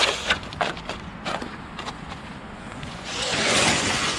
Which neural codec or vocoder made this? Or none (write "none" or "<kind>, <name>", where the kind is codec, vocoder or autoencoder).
vocoder, Vocos